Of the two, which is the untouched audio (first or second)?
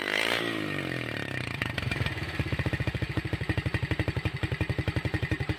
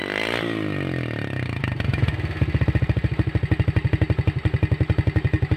second